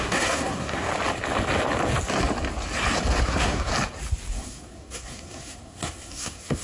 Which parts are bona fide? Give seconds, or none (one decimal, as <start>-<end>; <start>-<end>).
0.9-3.2; 3.7-4.3